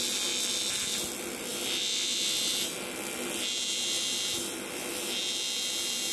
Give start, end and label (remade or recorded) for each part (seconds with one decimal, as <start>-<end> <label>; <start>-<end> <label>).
0.0-6.1 recorded